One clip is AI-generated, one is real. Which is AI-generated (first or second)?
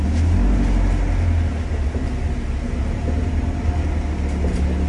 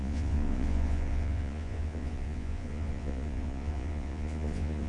second